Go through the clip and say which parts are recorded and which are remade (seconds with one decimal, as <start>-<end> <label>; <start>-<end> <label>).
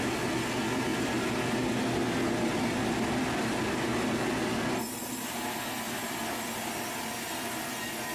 0.0-8.1 recorded